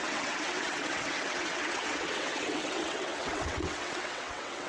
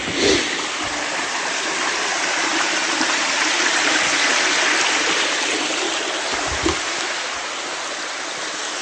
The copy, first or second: first